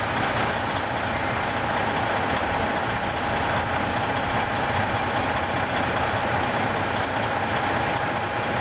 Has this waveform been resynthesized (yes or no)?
no